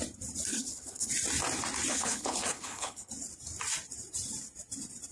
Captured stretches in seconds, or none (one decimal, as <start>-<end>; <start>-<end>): 0.0-0.5; 1.1-1.9; 3.1-5.1